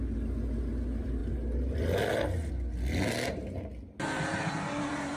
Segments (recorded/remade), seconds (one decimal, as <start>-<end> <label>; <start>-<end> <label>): 0.0-5.2 recorded